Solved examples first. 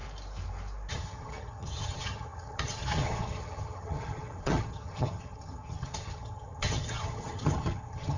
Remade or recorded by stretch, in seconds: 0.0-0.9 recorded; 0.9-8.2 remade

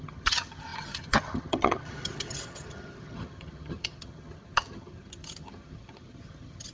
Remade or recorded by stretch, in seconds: 0.0-6.7 remade

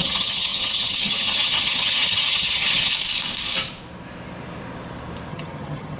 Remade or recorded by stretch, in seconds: 0.0-2.9 remade; 2.9-5.3 recorded; 5.3-6.0 remade

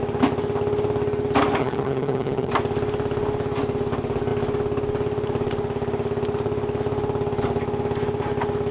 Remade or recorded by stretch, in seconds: 0.0-1.6 recorded; 1.6-2.5 remade; 2.5-8.7 recorded

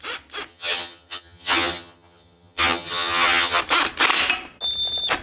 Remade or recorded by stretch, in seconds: 0.0-0.5 recorded; 0.5-3.6 remade; 3.6-5.2 recorded

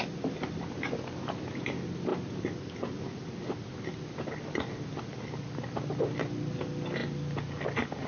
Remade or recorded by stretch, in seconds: 0.0-8.1 recorded

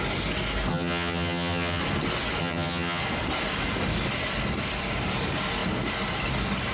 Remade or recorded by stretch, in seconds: 0.0-0.7 recorded; 0.7-1.8 remade; 1.8-2.4 recorded; 2.4-3.0 remade; 3.0-6.7 recorded